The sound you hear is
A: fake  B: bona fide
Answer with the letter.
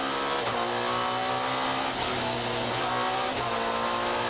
B